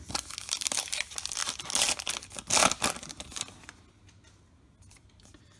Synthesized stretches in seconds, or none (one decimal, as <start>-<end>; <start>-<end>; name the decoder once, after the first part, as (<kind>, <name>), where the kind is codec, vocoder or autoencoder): none

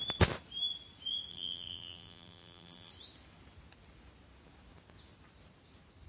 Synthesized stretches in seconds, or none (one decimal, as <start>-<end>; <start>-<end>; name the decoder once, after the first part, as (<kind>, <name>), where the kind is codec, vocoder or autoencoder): 1.3-2.9 (vocoder, BigVGAN v2)

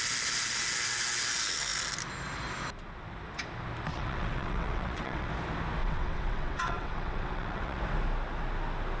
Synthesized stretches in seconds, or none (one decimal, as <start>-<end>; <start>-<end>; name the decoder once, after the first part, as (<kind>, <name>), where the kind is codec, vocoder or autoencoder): 3.9-5.3 (vocoder, WaveNeXt); 5.8-7.8

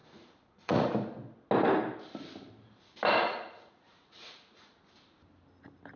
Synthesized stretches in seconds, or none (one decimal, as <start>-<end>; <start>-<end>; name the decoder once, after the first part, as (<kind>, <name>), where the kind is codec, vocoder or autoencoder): 0.0-0.9 (vocoder, Vocos); 3.2-4.7

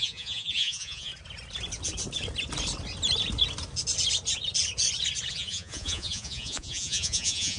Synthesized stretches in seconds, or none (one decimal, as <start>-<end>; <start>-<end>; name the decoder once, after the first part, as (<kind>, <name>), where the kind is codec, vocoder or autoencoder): 0.0-1.1 (vocoder, Vocos); 5.3-7.6

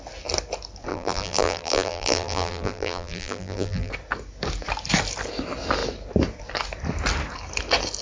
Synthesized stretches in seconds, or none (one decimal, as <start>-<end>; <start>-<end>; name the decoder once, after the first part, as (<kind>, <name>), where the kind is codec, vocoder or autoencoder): 0.9-3.9 (vocoder, BigVGAN v2)

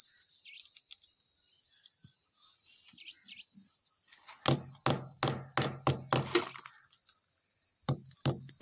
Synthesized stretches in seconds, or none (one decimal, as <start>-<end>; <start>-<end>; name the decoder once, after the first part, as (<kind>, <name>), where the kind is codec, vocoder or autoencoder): none

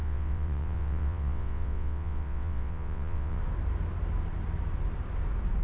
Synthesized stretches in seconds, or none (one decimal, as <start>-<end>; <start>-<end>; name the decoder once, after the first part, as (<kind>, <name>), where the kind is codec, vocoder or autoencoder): 0.0-3.4 (vocoder, WaveNeXt)